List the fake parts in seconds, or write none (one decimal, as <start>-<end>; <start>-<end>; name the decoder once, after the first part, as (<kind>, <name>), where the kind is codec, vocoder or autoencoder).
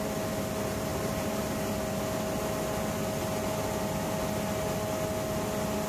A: 0.9-1.5 (vocoder, BigVGAN v2)